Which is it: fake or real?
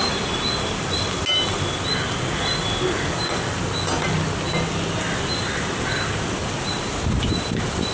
real